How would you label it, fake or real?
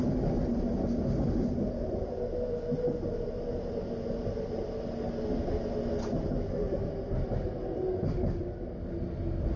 real